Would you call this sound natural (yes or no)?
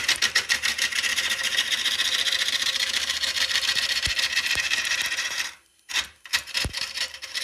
no